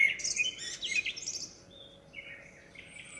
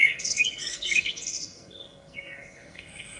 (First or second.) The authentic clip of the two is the first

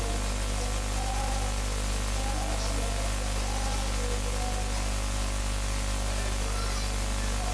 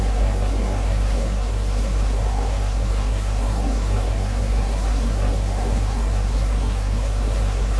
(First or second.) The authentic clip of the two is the first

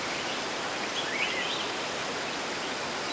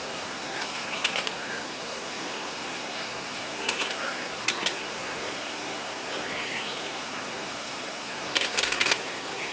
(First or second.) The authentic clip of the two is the first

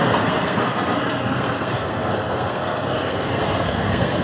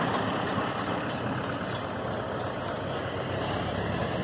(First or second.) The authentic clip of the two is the second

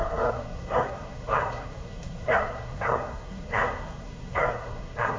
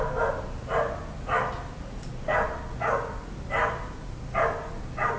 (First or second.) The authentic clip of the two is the second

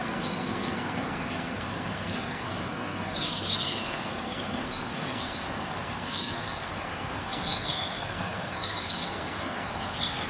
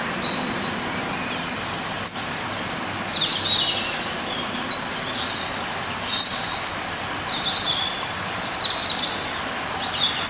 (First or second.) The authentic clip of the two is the second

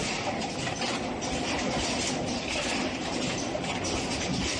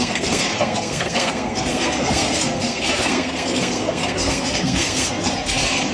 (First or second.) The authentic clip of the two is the first